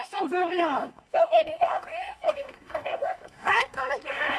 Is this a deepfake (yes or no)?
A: yes